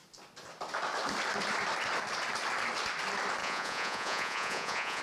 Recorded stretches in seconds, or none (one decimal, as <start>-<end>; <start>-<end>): 0.0-3.4